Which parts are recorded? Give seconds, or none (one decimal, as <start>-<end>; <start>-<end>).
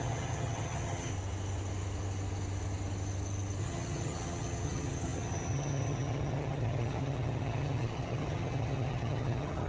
1.1-3.6